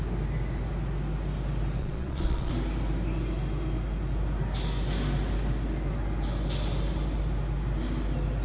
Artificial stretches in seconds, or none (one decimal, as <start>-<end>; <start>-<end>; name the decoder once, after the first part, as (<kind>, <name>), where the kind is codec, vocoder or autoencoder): 1.8-2.5 (vocoder, Vocos)